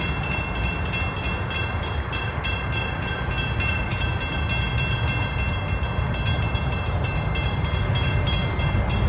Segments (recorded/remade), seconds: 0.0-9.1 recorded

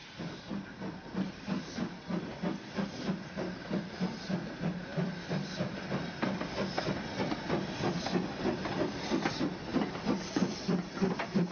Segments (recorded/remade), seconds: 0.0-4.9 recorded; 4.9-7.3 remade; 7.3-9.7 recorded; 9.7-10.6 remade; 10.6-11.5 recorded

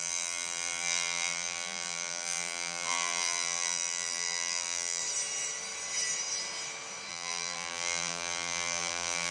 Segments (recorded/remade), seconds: 0.0-5.0 remade; 5.0-7.1 recorded; 7.1-9.3 remade

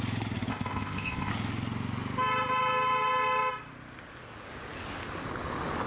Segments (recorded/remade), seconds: 0.0-0.5 recorded; 0.5-1.3 remade; 1.3-5.9 recorded

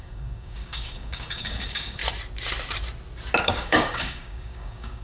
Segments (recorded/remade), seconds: 0.0-2.0 remade; 2.0-3.4 recorded; 3.4-5.0 remade

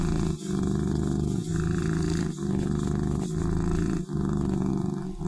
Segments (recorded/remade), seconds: 0.0-5.3 recorded